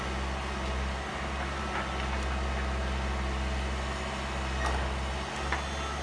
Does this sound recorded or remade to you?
recorded